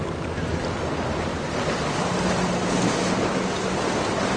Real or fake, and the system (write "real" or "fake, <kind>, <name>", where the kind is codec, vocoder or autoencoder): fake, vocoder, BigVGAN v2